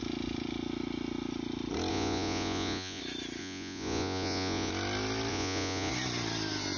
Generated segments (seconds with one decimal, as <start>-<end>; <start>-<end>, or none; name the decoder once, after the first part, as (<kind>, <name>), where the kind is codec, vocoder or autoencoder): 1.9-3.0 (vocoder, Vocos); 3.4-4.7; 5.3-5.9

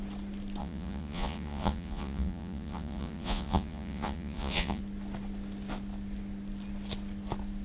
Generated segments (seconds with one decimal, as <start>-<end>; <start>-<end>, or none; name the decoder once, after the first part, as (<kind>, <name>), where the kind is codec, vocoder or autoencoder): 0.6-4.8 (vocoder, Vocos)